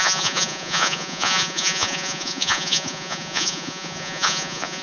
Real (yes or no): no